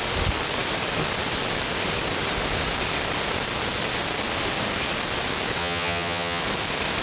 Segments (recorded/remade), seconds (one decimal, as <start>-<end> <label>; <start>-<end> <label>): 0.0-5.6 recorded; 5.6-6.4 remade; 6.4-7.0 recorded

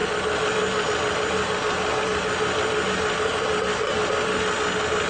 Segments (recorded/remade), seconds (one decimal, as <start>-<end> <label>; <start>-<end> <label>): 0.0-5.1 recorded

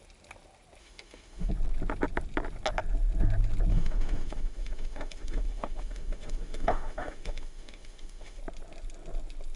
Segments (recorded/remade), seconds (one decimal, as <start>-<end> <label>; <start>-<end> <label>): 0.0-0.8 recorded; 0.8-1.5 remade; 1.5-3.7 recorded; 3.7-8.4 remade; 8.4-9.6 recorded

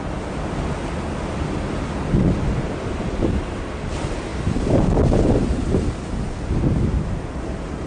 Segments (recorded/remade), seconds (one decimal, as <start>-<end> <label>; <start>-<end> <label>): 0.0-7.9 recorded

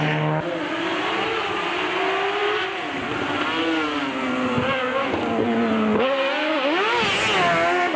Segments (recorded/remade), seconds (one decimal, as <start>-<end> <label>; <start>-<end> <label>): 0.0-8.0 recorded

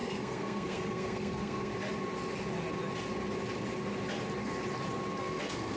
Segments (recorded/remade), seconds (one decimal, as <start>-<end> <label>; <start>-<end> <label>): 0.0-1.7 remade; 1.7-5.2 recorded; 5.2-5.8 remade